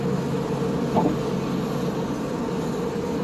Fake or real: real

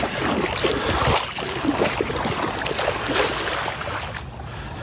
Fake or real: real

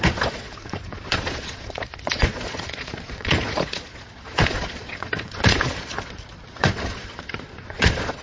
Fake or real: fake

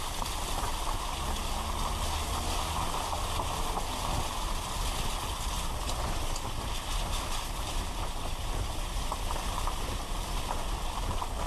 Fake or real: real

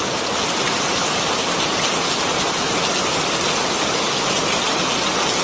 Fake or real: real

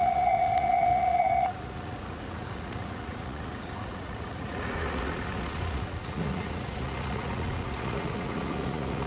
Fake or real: fake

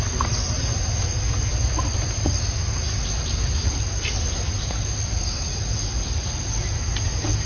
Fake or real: real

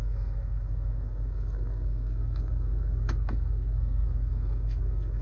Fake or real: fake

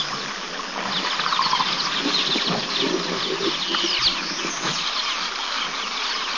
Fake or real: real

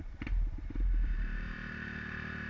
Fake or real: fake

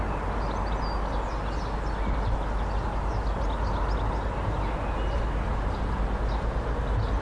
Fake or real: real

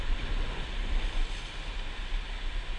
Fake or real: real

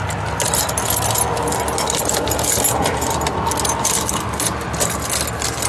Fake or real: real